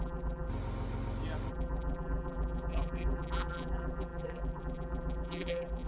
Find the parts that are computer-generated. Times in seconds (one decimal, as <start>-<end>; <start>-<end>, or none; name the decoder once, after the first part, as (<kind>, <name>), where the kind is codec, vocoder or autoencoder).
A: 0.0-0.5 (vocoder, BigVGAN v2); 1.5-5.9

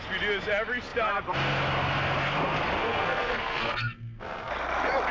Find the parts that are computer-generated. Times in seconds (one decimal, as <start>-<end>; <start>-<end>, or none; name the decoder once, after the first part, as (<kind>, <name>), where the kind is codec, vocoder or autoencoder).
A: 2.8-4.5 (codec, SNAC)

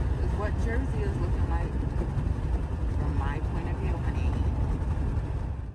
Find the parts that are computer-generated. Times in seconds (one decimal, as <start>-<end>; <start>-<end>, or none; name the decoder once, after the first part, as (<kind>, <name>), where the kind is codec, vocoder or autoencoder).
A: none